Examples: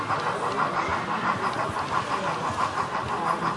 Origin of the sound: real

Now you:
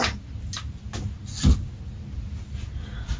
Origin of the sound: real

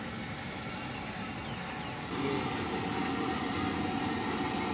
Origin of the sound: real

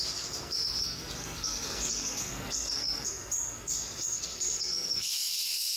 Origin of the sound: fake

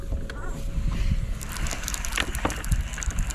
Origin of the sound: real